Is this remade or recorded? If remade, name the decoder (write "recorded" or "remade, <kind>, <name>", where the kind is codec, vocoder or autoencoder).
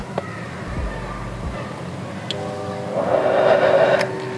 recorded